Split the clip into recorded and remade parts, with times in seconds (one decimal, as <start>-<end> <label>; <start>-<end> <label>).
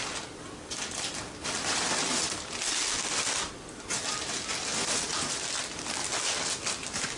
0.0-7.2 recorded